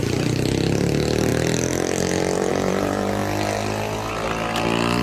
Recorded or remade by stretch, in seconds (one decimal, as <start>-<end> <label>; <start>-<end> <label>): 0.0-3.2 remade; 3.2-4.1 recorded; 4.1-5.0 remade